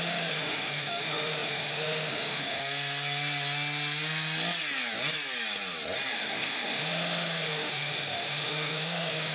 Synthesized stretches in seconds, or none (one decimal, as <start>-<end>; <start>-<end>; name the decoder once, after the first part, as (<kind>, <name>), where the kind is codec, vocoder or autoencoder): 0.0-2.6 (autoencoder, DAC-VAE); 6.1-9.3